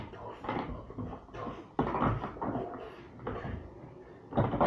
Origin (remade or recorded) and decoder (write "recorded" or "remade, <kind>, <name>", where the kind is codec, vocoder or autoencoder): recorded